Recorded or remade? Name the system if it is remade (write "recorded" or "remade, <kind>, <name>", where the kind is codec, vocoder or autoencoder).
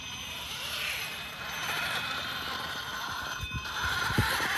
remade, vocoder, BigVGAN v2